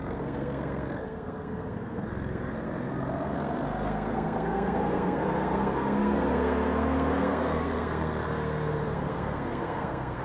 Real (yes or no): no